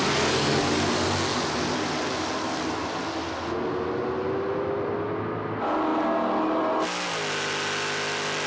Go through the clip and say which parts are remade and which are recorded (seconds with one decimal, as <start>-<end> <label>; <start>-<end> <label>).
0.0-8.5 recorded

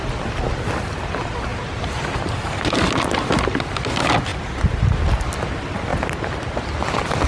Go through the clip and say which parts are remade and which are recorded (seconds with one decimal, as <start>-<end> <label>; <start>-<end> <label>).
0.0-1.5 recorded; 1.5-3.8 remade; 3.8-7.3 recorded